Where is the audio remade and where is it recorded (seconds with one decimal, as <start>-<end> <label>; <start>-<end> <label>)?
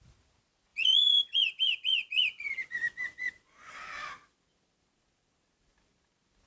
0.0-0.7 recorded; 0.7-3.7 remade; 3.7-6.5 recorded